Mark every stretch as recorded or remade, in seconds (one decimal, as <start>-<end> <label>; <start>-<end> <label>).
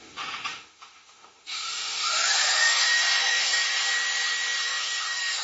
0.0-5.4 remade